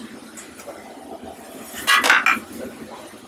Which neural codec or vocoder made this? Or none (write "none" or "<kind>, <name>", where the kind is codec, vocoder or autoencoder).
none